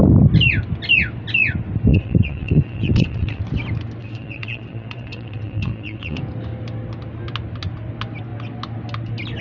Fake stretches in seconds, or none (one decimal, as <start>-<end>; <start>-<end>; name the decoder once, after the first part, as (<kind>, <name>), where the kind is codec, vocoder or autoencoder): 1.9-3.4 (vocoder, WaveNeXt); 4.0-6.2